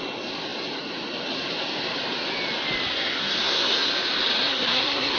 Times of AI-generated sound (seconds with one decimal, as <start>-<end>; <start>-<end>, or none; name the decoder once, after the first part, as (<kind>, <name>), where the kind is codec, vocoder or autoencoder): 2.9-3.9 (codec, SNAC); 4.4-5.2